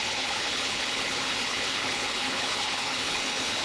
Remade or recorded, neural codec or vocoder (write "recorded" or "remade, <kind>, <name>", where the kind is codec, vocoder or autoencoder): remade, codec, HILCodec